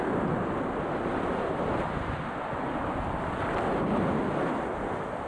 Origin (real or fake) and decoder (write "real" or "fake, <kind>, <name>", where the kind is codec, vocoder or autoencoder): real